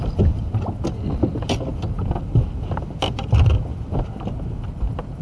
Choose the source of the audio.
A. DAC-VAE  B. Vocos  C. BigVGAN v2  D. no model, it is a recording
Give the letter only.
D